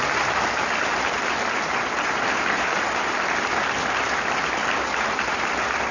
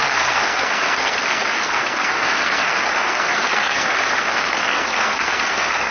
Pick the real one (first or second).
first